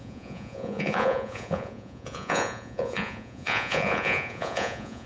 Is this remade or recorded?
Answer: remade